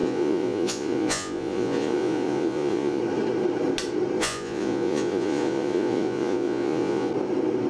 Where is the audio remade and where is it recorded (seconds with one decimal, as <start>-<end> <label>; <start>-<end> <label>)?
0.0-3.0 remade; 3.0-4.2 recorded; 4.2-7.1 remade; 7.1-7.7 recorded